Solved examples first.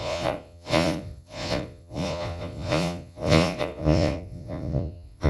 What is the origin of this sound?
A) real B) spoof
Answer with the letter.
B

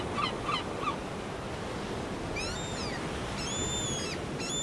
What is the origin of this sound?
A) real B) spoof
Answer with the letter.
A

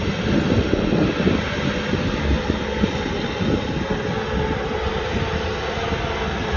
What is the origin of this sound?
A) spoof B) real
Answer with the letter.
B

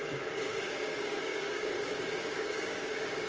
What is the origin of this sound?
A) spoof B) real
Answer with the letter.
A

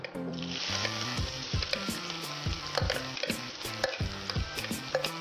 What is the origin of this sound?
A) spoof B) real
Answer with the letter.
A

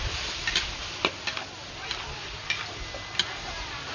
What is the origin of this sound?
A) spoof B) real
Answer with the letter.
B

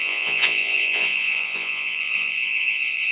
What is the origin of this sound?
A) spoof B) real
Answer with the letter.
A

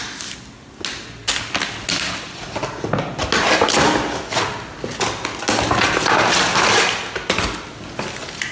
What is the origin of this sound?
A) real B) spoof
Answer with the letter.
A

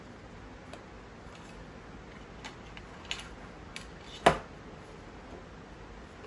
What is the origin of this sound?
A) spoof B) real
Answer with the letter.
B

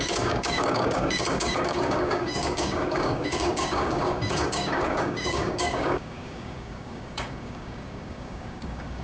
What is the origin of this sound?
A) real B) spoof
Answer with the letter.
B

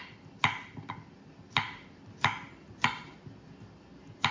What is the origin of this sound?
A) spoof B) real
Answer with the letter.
B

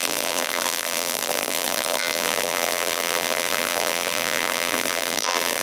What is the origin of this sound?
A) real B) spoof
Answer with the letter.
B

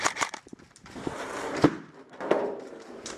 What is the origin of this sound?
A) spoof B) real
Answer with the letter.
A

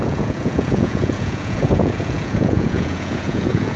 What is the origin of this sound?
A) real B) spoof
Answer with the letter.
B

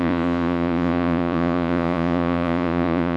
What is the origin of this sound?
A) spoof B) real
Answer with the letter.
A